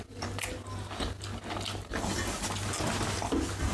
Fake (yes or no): no